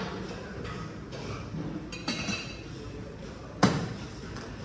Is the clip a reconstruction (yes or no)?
no